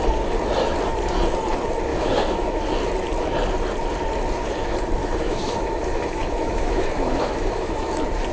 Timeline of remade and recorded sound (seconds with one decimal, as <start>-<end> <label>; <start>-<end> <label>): 0.0-1.9 recorded; 1.9-2.6 remade; 2.6-5.0 recorded; 5.0-7.9 remade; 7.9-8.3 recorded